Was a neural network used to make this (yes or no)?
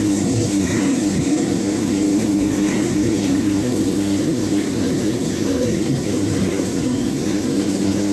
yes